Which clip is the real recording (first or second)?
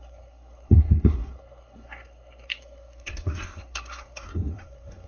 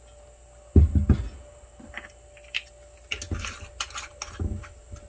second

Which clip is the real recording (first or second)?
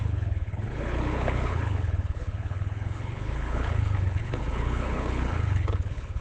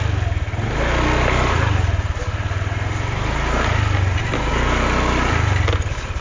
second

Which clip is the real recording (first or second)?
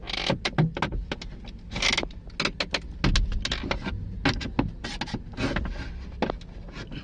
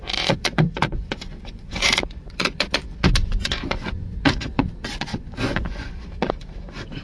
first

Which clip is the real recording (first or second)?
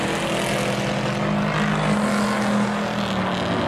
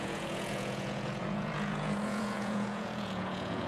first